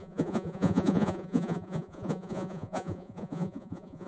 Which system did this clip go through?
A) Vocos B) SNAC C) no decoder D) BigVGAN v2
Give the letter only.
A